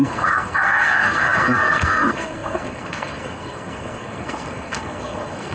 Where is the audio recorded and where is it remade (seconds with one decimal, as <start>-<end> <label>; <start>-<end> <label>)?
0.0-5.5 remade